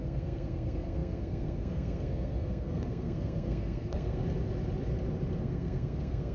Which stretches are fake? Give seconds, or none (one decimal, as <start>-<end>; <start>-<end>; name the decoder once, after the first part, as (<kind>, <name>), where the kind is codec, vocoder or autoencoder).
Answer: 0.0-4.2 (codec, SNAC); 5.4-6.3